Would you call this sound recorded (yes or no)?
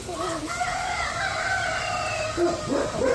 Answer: no